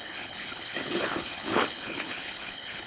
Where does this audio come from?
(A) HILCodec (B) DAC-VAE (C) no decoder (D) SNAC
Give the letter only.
A